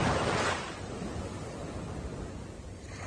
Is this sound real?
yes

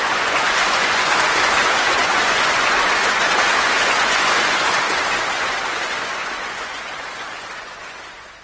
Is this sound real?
no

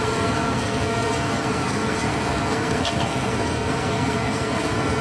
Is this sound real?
no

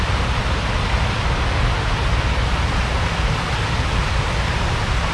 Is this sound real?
yes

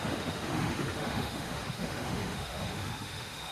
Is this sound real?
no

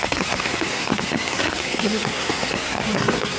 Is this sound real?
no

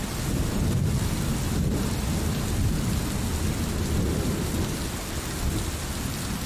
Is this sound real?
yes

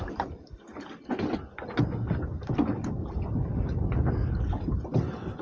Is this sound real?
yes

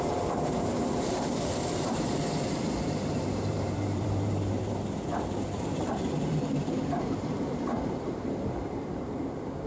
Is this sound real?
no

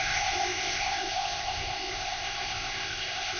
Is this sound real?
no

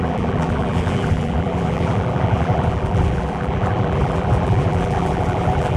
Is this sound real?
no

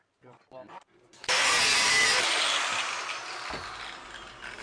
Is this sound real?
yes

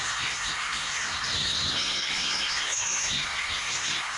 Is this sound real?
no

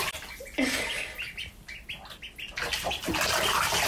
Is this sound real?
yes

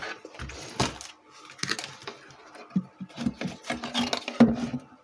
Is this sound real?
yes